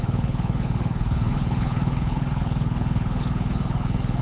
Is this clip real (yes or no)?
no